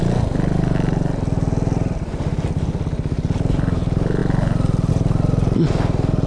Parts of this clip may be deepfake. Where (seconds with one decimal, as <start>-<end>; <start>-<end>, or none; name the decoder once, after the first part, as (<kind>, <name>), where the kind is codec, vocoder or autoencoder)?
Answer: none